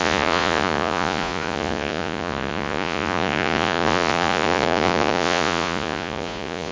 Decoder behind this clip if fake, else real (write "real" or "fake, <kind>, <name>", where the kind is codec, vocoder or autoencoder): fake, vocoder, Vocos